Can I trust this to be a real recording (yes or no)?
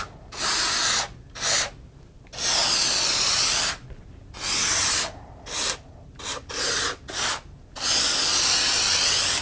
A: yes